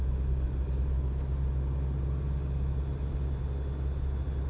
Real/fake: real